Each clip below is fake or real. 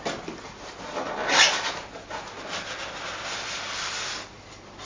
real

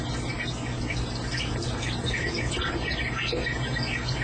real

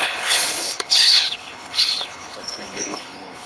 fake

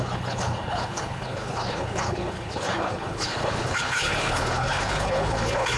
fake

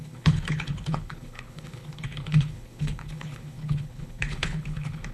fake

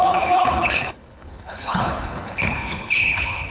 fake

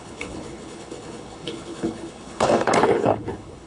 fake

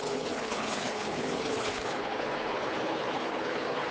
fake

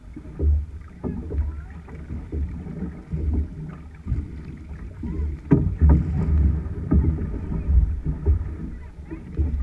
real